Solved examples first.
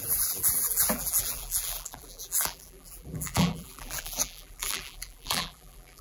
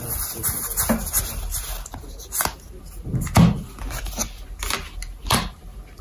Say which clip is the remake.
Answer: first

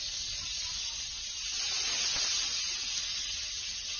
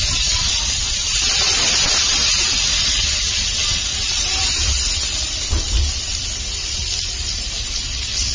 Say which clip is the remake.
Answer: second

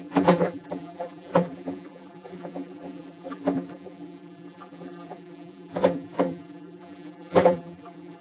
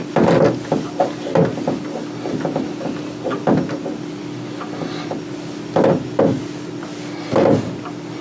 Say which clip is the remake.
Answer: first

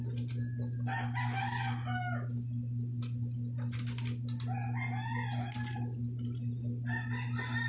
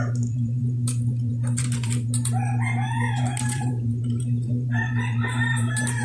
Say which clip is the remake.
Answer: second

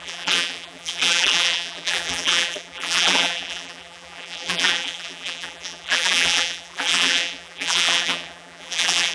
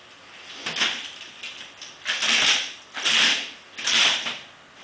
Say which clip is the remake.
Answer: first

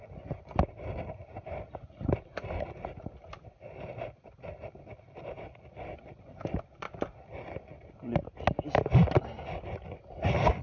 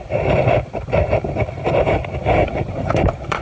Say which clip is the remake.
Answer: second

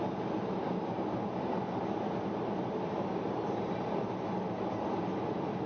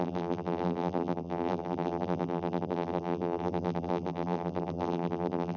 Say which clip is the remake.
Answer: second